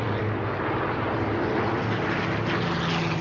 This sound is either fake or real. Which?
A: real